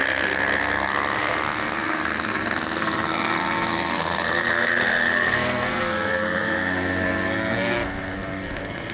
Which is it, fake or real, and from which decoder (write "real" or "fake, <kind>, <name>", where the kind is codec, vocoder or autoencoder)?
fake, codec, SNAC